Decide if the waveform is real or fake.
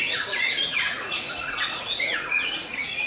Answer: fake